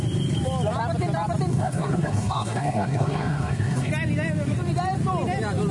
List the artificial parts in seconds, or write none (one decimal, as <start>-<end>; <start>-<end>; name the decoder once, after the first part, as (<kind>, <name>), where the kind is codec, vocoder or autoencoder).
1.5-3.9 (codec, SNAC)